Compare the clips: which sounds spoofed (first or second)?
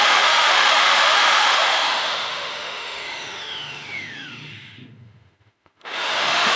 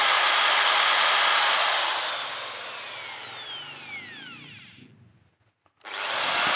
first